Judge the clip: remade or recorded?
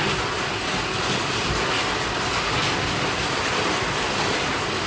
recorded